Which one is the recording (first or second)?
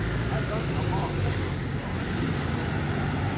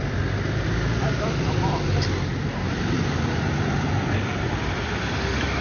first